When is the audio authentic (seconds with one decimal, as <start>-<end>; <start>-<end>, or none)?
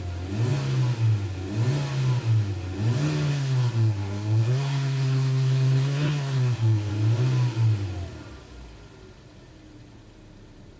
0.0-3.3; 6.9-10.8